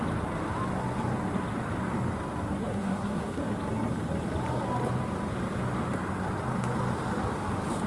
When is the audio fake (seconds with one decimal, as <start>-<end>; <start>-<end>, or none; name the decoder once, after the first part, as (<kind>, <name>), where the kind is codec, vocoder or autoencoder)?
2.6-3.4 (codec, SNAC)